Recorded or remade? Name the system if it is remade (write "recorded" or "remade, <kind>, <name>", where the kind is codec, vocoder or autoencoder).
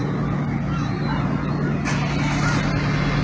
recorded